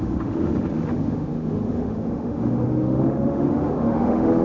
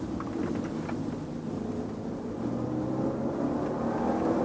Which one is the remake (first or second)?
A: first